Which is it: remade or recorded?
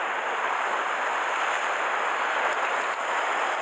recorded